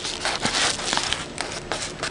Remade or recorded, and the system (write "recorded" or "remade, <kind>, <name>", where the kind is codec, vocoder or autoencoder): recorded